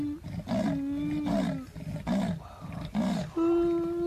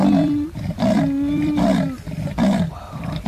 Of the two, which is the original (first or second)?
first